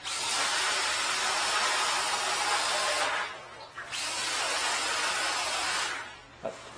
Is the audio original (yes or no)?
yes